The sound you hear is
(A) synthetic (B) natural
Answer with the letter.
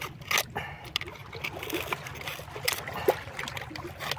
B